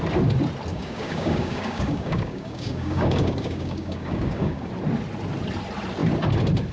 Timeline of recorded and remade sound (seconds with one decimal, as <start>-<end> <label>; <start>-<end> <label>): 0.0-0.7 recorded; 0.7-4.7 remade; 4.7-6.7 recorded